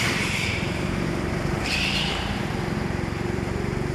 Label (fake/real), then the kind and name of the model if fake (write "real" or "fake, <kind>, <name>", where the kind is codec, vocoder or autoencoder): fake, vocoder, BigVGAN v2